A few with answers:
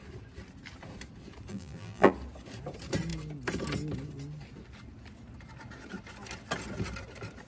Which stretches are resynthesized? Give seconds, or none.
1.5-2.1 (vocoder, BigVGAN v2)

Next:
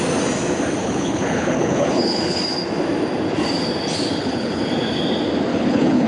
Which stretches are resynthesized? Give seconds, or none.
0.8-2.4 (codec, HILCodec); 4.2-4.7; 5.5-6.1

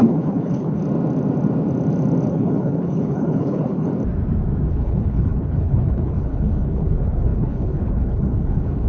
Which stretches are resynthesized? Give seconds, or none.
0.0-0.8 (codec, HILCodec); 2.3-3.9; 4.7-8.9

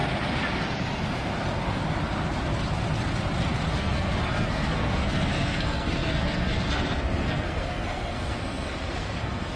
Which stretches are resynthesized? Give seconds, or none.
3.7-9.6 (codec, SNAC)

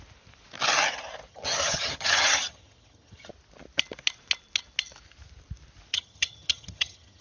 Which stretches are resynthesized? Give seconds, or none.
1.3-3.3 (vocoder, HiFi-GAN); 5.9-7.2

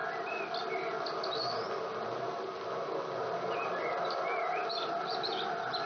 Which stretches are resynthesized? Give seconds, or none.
none

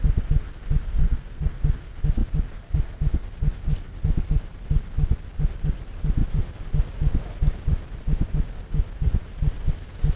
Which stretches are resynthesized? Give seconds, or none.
1.0-1.6 (codec, SNAC)